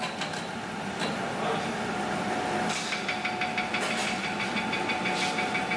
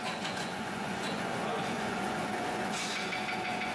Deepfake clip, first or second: second